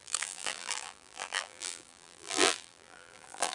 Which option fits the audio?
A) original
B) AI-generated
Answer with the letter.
B